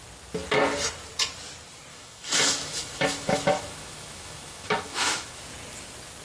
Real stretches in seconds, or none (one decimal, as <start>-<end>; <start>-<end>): 0.0-1.9; 5.4-6.2